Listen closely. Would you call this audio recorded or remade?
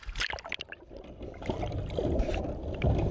recorded